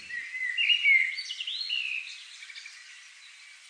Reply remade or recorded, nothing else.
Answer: recorded